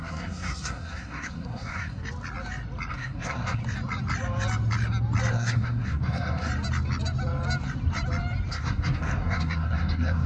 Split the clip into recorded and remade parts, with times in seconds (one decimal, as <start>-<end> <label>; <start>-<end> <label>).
0.0-2.0 remade; 2.0-2.9 recorded; 2.9-3.6 remade; 3.6-5.3 recorded; 5.3-6.5 remade; 6.5-8.5 recorded; 8.5-10.3 remade